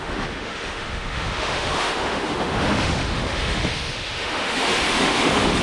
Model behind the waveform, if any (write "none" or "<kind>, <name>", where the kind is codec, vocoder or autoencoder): autoencoder, DAC-VAE